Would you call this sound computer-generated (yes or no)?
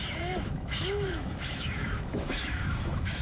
yes